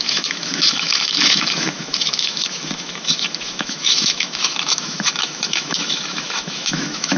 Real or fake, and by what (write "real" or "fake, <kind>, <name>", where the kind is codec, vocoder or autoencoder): fake, autoencoder, DAC-VAE